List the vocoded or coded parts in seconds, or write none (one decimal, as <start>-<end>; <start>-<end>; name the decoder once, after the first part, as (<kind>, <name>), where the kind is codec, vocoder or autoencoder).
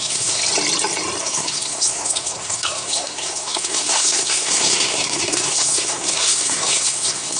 0.0-0.4 (codec, SNAC); 1.2-7.4